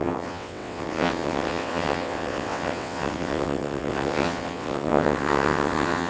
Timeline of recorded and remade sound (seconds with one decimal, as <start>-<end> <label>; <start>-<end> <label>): 0.0-6.1 remade